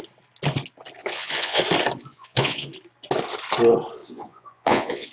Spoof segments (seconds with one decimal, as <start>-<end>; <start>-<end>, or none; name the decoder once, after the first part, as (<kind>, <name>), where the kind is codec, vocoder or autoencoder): 1.0-1.6 (vocoder, Vocos); 2.1-2.7; 4.0-5.1